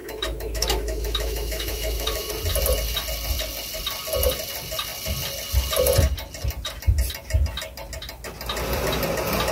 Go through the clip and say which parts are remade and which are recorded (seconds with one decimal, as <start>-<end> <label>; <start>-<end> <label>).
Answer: 0.0-2.3 remade; 2.3-9.5 recorded